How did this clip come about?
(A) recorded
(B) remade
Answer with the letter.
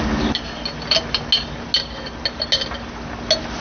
A